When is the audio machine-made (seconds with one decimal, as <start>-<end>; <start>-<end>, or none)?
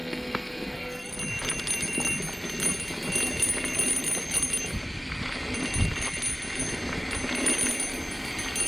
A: 0.0-1.1